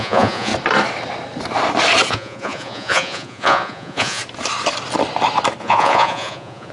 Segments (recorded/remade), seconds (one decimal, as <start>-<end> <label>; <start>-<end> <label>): 0.0-0.5 remade; 0.5-2.1 recorded; 2.1-4.2 remade; 4.2-5.6 recorded; 5.6-6.7 remade